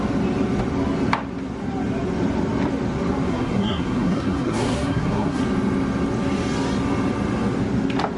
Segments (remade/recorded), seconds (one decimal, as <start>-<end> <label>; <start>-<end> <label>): 0.0-3.3 recorded; 3.3-5.4 remade; 5.4-8.2 recorded